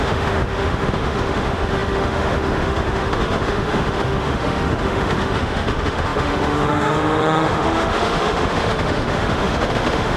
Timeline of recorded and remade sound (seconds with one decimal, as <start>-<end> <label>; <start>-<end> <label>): 0.0-10.2 remade